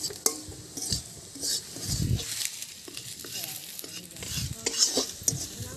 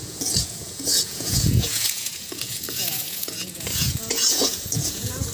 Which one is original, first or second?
first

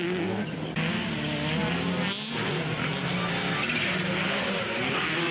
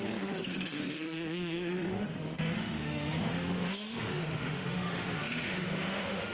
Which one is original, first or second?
first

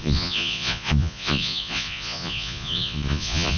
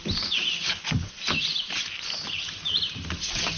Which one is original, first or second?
second